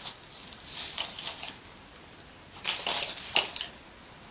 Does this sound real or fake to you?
real